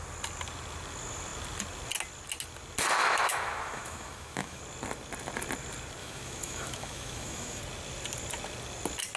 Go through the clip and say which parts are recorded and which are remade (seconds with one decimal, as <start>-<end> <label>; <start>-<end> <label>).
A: 0.0-3.0 recorded; 3.0-4.6 remade; 4.6-6.0 recorded; 6.0-7.6 remade; 7.6-9.2 recorded